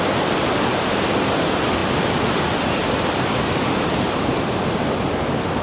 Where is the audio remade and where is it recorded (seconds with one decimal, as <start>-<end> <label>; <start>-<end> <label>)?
0.0-5.6 recorded